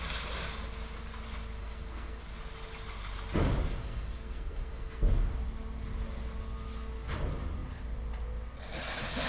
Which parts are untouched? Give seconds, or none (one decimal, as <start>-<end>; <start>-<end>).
0.0-1.6; 2.2-3.8; 5.0-9.3